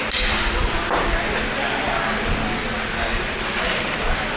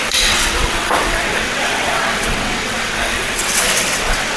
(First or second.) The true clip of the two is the first